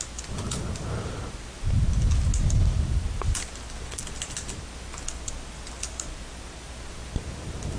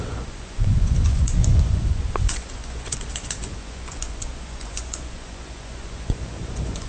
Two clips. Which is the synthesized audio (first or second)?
second